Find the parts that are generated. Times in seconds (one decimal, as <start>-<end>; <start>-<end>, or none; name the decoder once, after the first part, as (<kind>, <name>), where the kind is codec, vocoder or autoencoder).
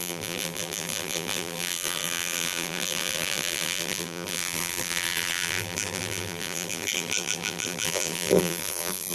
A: 0.0-9.1 (vocoder, BigVGAN v2)